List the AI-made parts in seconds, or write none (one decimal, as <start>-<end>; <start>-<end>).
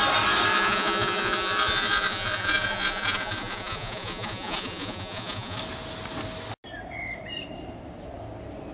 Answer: 0.5-5.6